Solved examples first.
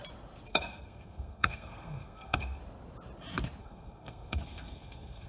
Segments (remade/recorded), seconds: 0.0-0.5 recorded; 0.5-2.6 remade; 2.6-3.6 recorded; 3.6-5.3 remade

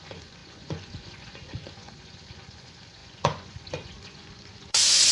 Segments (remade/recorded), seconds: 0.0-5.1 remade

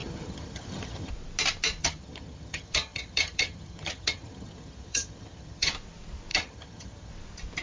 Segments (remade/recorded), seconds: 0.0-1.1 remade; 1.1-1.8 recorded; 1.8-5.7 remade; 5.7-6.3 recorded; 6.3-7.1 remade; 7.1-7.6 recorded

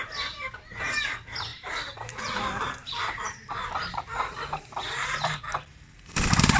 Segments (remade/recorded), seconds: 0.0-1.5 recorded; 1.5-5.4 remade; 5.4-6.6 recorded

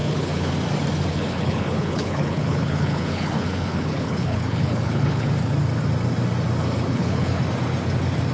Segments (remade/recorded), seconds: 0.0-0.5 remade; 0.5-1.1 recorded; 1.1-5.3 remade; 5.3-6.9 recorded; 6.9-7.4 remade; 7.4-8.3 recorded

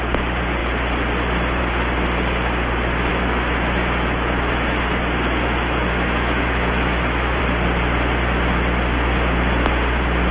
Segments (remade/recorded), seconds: 0.0-3.1 recorded; 3.1-7.4 remade; 7.4-10.3 recorded

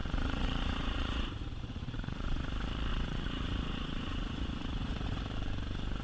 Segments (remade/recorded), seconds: 0.0-2.5 remade; 2.5-2.9 recorded; 2.9-5.2 remade; 5.2-6.0 recorded